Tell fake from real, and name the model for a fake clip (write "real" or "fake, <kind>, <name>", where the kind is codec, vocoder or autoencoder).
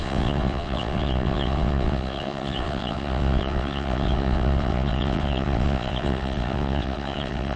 fake, vocoder, WaveNeXt